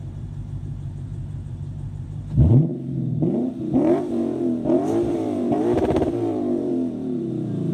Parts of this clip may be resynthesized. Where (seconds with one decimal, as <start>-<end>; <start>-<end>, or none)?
0.0-7.7